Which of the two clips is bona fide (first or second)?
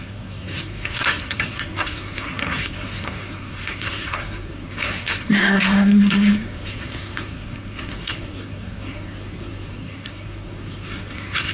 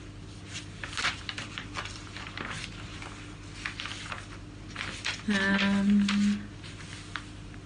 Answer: second